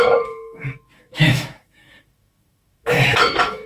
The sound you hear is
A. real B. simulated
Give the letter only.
B